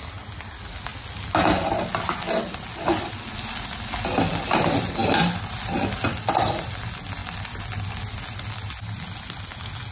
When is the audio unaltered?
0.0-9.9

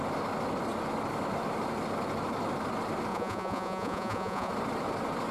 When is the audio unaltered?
0.0-3.1; 4.5-5.3

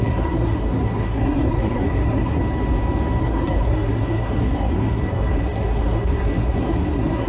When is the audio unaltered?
2.4-3.2